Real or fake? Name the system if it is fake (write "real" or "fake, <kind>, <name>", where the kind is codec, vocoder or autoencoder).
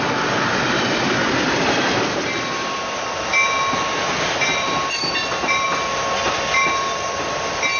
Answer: real